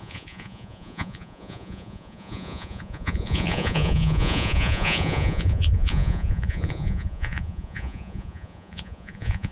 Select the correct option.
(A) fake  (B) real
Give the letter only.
A